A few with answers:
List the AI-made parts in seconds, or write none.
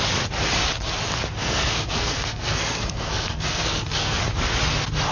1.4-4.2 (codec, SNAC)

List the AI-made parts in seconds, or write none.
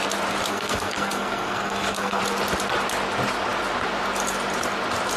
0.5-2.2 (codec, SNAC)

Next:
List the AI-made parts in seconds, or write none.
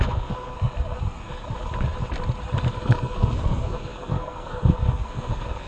0.0-0.7 (codec, SNAC); 2.7-5.7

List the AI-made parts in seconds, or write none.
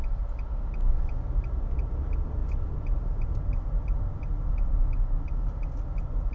none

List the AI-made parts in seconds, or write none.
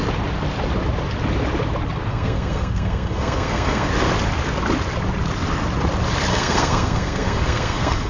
2.1-3.9 (codec, SNAC); 6.3-8.1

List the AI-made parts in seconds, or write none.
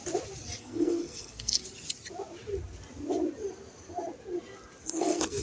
0.6-1.6 (codec, SNAC); 4.8-5.4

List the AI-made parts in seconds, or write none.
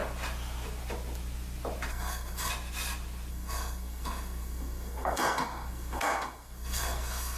1.9-2.5 (codec, SNAC); 3.3-7.4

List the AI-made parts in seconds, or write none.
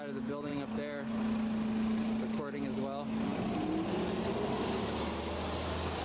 none